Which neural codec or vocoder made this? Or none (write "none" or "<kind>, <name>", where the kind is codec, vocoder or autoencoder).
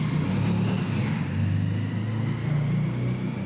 none